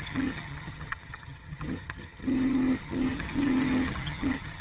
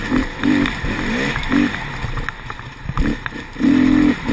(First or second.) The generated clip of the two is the first